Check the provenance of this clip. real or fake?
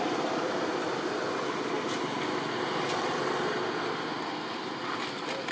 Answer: real